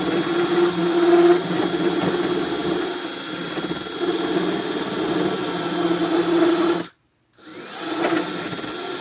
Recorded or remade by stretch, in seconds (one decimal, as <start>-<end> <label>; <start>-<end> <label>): 0.0-9.0 recorded